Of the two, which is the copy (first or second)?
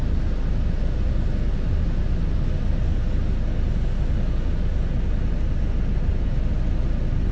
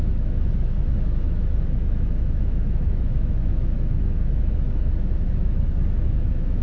second